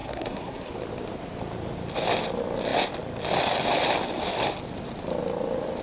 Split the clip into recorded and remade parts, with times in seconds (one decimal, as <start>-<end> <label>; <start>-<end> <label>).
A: 0.0-0.7 remade; 0.7-5.8 recorded